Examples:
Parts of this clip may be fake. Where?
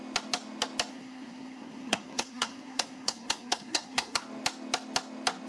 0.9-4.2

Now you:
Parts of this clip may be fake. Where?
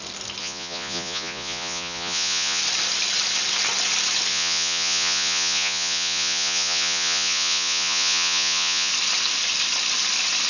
0.4-2.6; 4.3-8.9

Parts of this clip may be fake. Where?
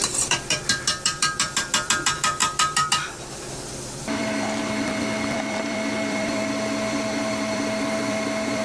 0.0-8.6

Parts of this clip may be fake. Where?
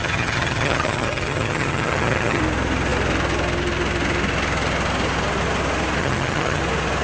0.0-2.4; 6.0-6.6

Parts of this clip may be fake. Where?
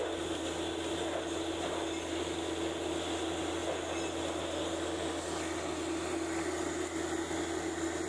none